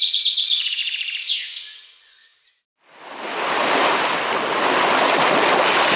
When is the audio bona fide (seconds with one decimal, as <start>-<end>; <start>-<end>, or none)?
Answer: 0.8-1.3; 2.3-6.0